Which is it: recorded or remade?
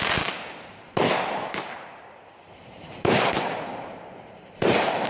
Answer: remade